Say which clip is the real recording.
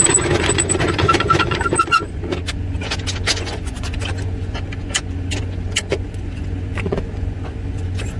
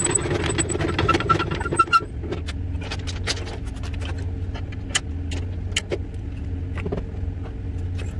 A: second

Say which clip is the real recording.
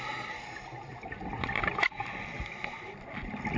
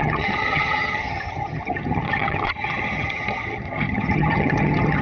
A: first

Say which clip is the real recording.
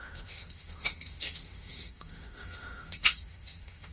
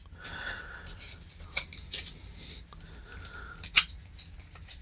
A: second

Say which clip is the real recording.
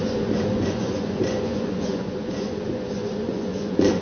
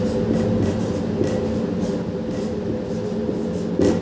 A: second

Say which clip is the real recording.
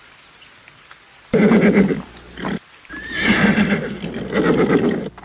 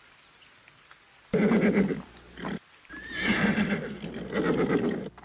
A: second